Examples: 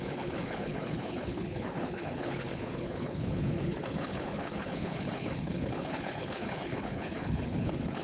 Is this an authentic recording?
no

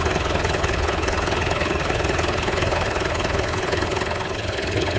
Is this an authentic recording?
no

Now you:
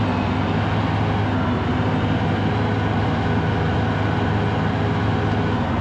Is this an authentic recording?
yes